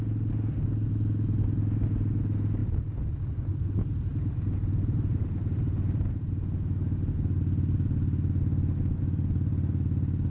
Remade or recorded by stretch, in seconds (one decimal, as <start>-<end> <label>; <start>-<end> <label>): 0.0-10.3 recorded